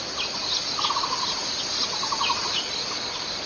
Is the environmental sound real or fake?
real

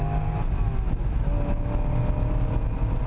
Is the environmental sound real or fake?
real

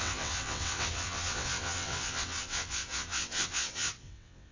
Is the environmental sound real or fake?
fake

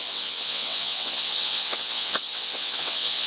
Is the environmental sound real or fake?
fake